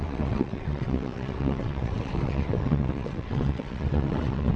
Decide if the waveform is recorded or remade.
remade